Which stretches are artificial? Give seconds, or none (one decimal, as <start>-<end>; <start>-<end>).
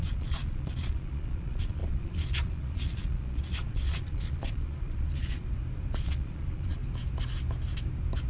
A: 0.0-5.4; 5.9-6.8